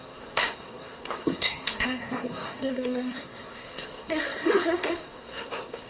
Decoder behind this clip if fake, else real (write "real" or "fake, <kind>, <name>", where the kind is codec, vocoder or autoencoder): fake, codec, SNAC